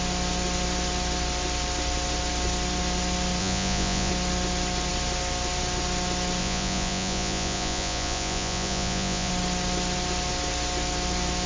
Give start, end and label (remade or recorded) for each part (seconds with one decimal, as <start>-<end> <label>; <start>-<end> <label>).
0.0-3.4 recorded; 3.4-4.1 remade; 4.1-6.4 recorded; 6.4-9.3 remade; 9.3-11.5 recorded